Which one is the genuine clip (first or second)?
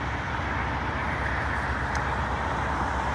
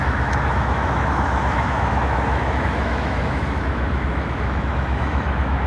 first